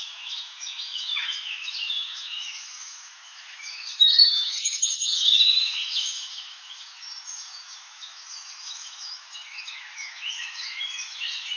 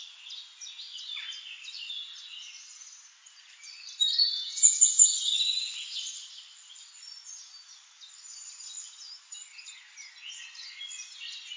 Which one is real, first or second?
second